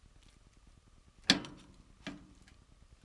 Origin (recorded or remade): recorded